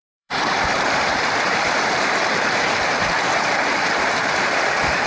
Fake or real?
fake